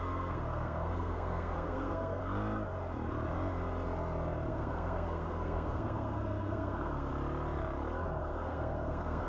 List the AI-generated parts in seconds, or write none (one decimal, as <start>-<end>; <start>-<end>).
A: 0.0-2.2; 4.5-7.1; 8.2-9.3